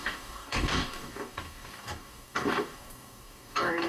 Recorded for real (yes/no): no